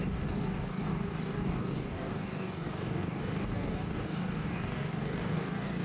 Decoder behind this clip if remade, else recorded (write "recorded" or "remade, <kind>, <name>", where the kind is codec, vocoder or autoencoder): remade, codec, DAC